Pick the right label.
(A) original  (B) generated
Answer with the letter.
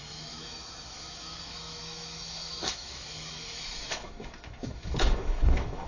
B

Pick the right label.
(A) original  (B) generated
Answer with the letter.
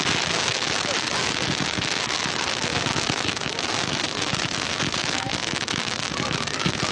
B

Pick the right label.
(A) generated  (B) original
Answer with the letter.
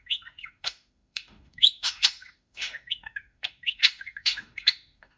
A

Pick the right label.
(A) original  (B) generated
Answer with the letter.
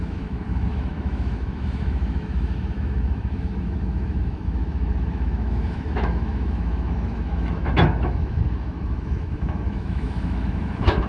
B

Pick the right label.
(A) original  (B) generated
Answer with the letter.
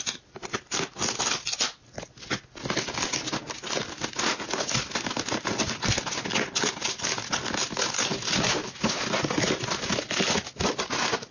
A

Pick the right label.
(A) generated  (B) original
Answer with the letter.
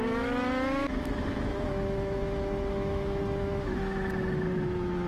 A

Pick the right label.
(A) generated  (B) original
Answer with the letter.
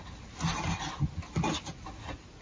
B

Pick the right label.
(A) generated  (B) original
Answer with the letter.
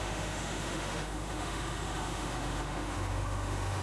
A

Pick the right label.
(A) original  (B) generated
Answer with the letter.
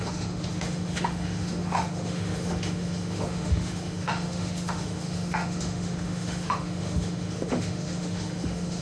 B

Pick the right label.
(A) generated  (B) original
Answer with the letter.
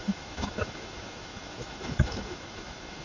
A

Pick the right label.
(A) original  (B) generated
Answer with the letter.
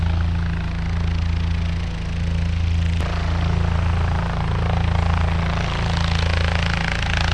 A